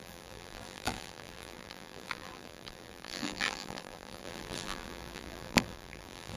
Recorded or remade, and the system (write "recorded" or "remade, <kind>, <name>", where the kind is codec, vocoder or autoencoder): remade, vocoder, BigVGAN v2